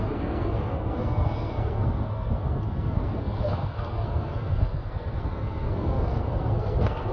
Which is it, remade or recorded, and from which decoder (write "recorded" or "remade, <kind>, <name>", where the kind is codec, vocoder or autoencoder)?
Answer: remade, codec, SNAC